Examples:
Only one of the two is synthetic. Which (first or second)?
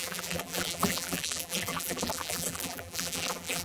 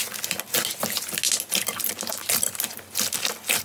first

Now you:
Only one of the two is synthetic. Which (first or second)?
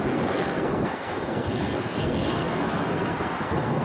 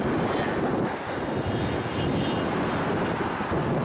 first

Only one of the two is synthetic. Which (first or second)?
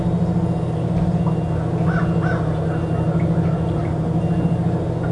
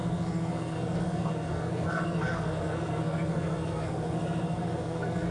second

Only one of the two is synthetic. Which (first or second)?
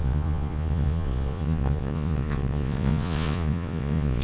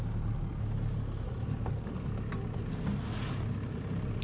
first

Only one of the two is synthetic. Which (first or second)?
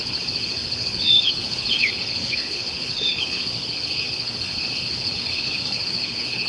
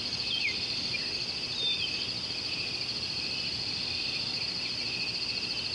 first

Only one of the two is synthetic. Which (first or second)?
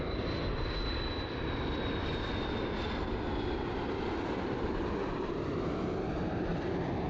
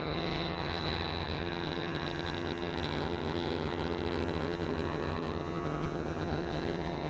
second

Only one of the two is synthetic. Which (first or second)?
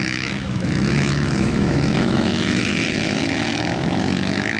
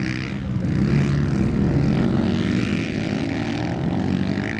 first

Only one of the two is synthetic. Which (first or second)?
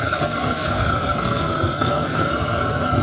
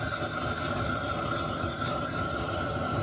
first